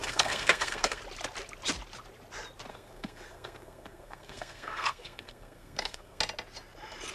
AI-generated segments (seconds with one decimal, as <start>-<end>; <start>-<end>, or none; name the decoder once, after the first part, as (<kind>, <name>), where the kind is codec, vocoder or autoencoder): 0.0-1.0 (codec, SNAC); 2.7-6.2